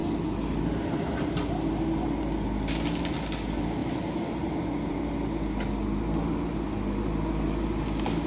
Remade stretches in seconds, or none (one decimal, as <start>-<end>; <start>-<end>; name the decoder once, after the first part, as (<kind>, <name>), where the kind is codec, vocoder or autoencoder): none